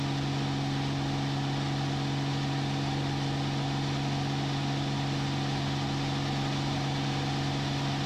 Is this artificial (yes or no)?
no